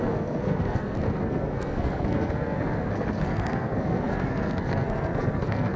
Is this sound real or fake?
fake